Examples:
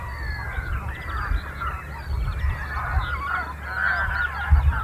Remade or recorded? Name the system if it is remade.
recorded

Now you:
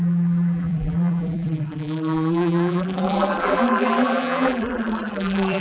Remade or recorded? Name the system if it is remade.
remade, vocoder, BigVGAN v2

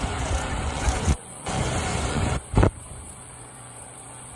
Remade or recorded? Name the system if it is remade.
remade, vocoder, Vocos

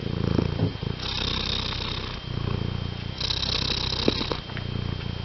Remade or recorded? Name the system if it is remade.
recorded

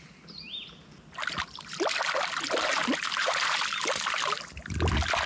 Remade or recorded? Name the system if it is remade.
recorded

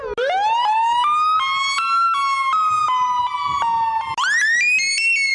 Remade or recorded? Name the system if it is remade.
recorded